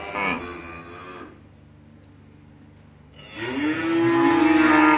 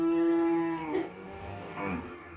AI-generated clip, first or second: second